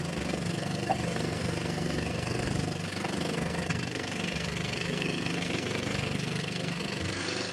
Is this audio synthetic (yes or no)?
yes